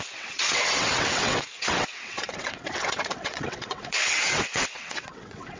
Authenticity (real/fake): fake